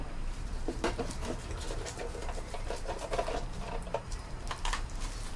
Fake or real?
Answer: fake